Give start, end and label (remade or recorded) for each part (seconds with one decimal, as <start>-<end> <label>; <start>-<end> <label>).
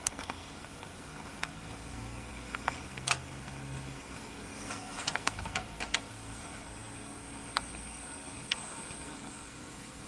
0.0-10.1 remade